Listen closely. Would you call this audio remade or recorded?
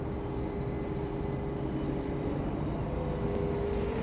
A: recorded